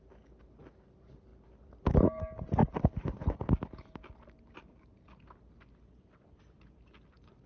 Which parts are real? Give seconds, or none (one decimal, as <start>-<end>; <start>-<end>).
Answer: 0.0-7.5